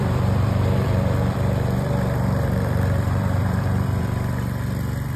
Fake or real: fake